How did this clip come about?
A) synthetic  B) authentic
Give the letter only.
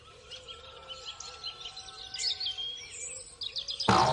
B